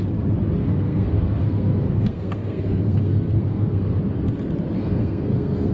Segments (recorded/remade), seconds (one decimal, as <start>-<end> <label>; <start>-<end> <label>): 0.0-0.6 recorded; 0.6-4.0 remade; 4.0-4.8 recorded; 4.8-5.7 remade